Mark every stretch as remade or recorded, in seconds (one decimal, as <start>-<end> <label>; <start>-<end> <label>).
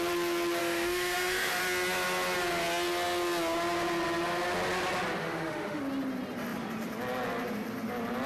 0.0-0.6 recorded; 0.6-1.6 remade; 1.6-5.2 recorded; 5.2-5.8 remade; 5.8-8.3 recorded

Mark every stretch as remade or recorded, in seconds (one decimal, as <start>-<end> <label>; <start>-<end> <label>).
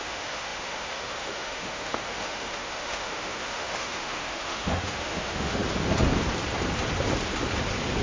0.0-5.6 remade; 5.6-8.0 recorded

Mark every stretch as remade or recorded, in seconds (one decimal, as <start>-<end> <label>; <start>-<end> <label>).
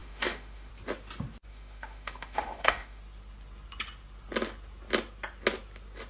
0.0-0.7 remade; 0.7-1.5 recorded; 1.5-3.0 remade; 3.0-6.1 recorded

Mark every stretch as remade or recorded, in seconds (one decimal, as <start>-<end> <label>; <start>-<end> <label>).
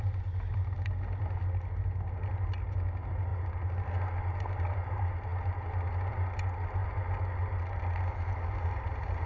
0.0-9.3 recorded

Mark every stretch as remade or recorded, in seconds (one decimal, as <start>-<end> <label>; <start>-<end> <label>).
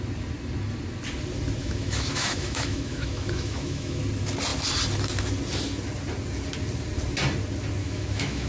0.0-1.6 recorded; 1.6-4.0 remade; 4.0-7.8 recorded; 7.8-8.5 remade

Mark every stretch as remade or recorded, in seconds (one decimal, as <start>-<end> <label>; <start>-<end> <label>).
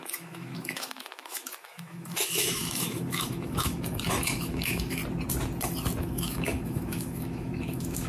0.0-5.0 remade; 5.0-6.0 recorded; 6.0-8.1 remade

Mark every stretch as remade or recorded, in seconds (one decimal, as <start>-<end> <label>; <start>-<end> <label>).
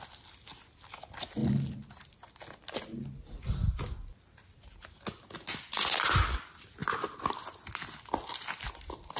0.0-9.2 recorded